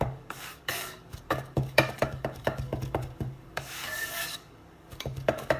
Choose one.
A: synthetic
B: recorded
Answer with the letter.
A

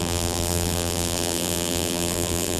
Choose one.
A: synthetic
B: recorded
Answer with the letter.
A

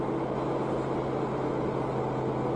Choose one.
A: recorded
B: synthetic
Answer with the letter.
A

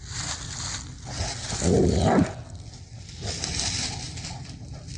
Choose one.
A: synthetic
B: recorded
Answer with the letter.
B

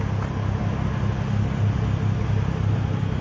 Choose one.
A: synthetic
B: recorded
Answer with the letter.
B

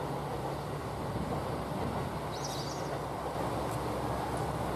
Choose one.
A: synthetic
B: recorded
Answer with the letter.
B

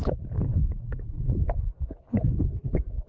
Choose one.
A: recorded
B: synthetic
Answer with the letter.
B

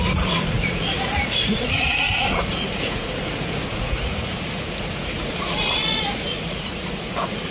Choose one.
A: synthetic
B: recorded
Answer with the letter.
A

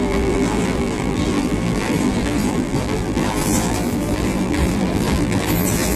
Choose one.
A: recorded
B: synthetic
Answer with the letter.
B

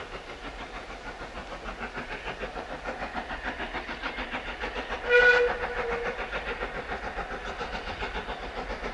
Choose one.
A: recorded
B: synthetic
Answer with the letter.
A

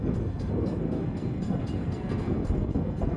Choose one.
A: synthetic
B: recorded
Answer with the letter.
A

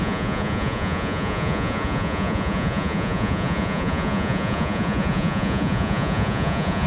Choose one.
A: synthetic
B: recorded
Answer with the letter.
A